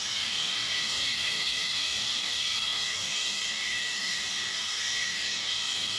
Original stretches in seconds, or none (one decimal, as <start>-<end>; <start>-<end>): none